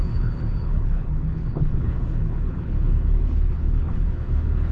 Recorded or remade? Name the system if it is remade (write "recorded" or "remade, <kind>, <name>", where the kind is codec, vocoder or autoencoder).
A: remade, codec, HILCodec